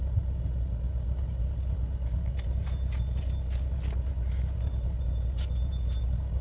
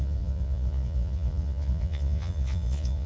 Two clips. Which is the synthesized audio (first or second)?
second